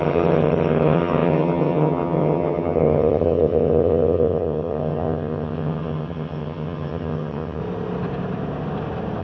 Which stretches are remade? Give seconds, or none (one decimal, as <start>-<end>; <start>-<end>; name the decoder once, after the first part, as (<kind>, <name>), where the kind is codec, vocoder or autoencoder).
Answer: 0.0-7.6 (vocoder, HiFi-GAN)